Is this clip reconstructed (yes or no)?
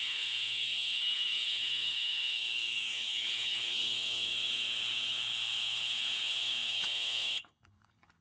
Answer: yes